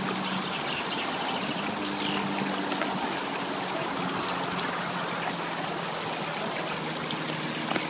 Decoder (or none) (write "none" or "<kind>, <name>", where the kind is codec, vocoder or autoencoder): none